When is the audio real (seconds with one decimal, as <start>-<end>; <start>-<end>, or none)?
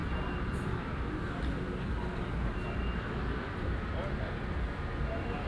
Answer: 0.8-5.5